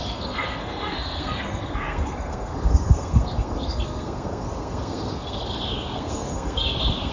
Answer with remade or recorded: remade